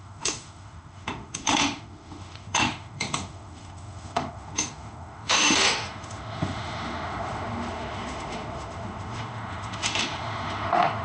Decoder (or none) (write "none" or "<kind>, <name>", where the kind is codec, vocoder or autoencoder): autoencoder, DAC-VAE